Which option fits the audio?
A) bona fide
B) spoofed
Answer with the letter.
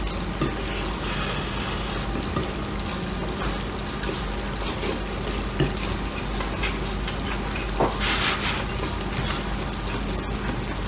A